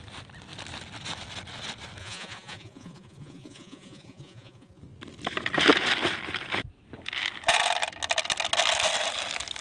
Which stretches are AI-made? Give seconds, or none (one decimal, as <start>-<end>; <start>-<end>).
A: 2.0-4.8